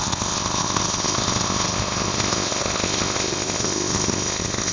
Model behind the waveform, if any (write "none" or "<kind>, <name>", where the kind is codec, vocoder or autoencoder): codec, ZipCodec